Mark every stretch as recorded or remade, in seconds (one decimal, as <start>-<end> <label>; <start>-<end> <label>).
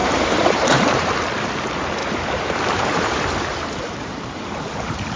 0.0-1.1 remade; 1.1-2.0 recorded; 2.0-5.2 remade